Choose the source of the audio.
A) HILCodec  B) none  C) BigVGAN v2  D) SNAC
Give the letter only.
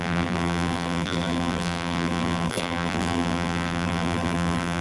C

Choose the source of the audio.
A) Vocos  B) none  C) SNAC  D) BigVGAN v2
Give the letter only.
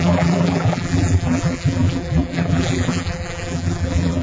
D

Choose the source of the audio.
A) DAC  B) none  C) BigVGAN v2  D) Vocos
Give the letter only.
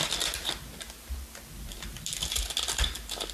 B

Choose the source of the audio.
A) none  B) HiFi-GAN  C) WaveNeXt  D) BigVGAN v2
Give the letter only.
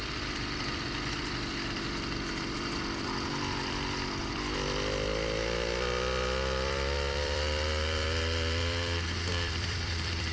D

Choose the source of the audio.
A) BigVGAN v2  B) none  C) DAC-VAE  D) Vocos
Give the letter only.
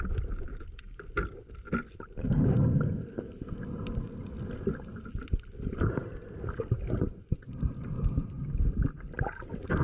B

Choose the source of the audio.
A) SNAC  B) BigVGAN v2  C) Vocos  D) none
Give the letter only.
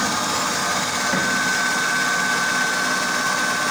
D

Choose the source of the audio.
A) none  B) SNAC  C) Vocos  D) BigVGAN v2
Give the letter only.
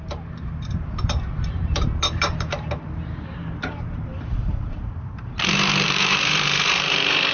D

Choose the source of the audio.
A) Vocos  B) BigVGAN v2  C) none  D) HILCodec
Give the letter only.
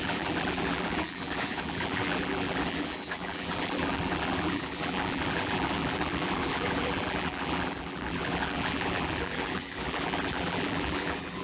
B